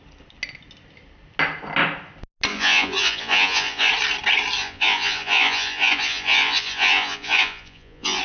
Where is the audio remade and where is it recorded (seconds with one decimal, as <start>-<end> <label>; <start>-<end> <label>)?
0.0-2.5 recorded; 2.5-3.9 remade; 3.9-4.6 recorded; 4.6-8.2 remade